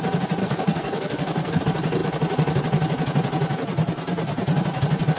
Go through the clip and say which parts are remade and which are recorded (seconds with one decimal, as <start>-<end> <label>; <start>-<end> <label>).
0.0-0.4 recorded; 0.4-1.6 remade; 1.6-5.2 recorded